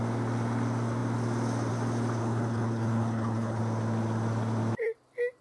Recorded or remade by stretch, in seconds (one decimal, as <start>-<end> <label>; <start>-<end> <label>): 0.0-2.2 recorded; 2.2-3.6 remade; 3.6-5.4 recorded